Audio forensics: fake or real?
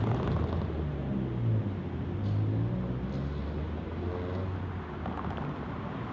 real